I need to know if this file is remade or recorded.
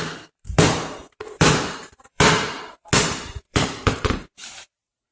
remade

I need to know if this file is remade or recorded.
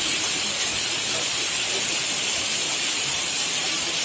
recorded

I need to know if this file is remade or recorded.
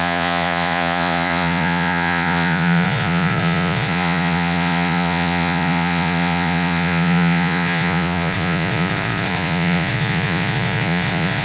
remade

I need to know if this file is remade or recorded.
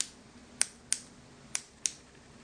recorded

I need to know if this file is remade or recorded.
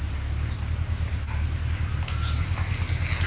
recorded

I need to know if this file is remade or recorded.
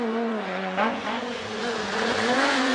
remade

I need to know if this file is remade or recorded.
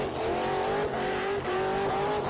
recorded